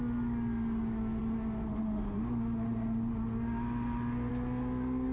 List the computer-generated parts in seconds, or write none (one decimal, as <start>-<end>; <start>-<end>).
none